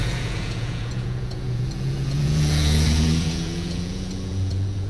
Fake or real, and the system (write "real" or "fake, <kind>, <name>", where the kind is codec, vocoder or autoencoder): fake, vocoder, Vocos